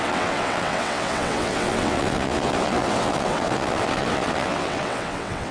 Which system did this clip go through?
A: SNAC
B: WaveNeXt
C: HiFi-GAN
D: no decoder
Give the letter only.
B